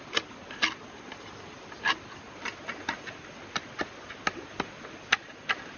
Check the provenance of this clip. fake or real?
real